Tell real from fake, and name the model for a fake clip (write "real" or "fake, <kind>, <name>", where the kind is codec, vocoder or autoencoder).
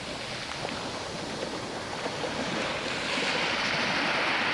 real